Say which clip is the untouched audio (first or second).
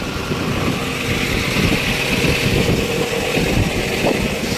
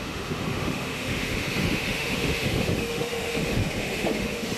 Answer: first